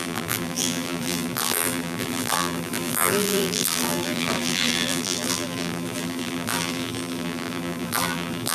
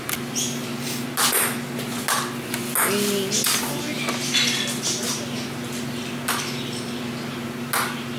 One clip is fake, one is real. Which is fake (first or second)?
first